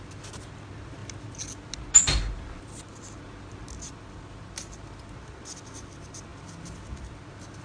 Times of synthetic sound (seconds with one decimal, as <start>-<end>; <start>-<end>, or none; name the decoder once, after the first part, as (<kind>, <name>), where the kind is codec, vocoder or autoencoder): none